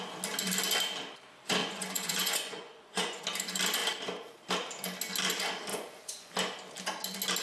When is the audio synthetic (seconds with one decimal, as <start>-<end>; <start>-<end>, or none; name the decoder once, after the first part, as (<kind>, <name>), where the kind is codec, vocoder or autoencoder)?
1.6-3.2 (vocoder, Vocos); 5.7-6.3

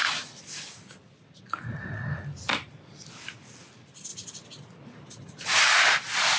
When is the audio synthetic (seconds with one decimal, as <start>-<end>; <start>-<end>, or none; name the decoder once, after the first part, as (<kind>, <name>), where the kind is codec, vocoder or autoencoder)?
none

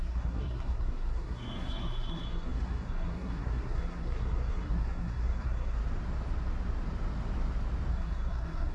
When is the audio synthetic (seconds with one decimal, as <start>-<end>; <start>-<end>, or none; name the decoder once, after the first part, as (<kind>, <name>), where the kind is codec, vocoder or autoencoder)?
0.0-5.8 (codec, SNAC); 7.9-8.7